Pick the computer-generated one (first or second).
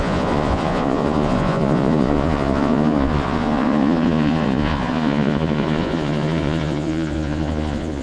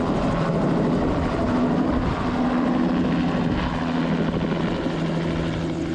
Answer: first